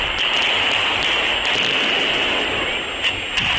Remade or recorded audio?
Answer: recorded